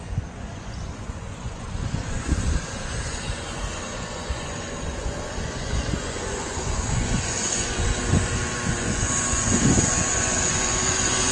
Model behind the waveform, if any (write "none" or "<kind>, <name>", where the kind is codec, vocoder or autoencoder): vocoder, Vocos